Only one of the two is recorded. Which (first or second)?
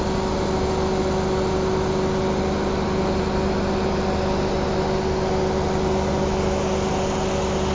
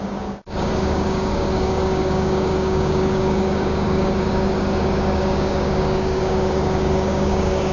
first